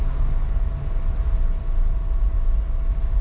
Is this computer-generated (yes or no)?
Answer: no